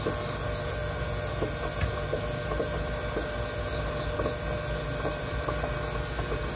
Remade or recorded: recorded